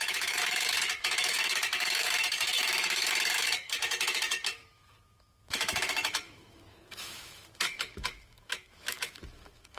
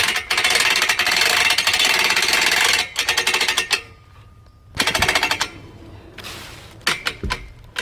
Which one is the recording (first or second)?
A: second